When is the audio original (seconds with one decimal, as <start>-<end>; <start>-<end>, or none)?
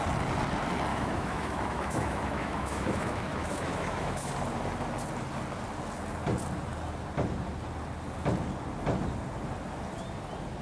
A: 0.0-0.9; 4.3-10.6